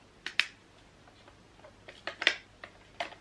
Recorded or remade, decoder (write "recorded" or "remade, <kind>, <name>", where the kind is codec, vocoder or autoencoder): recorded